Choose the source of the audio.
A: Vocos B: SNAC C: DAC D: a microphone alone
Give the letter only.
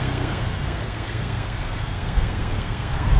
B